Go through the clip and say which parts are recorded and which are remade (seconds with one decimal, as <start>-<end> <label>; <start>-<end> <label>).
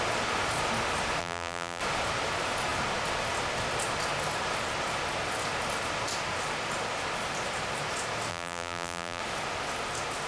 0.0-1.2 recorded; 1.2-1.8 remade; 1.8-8.3 recorded; 8.3-9.2 remade; 9.2-10.3 recorded